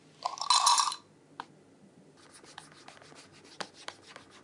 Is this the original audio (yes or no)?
yes